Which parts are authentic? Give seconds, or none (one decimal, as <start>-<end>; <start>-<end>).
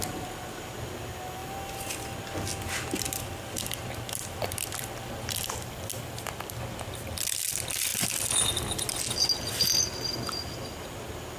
0.0-11.4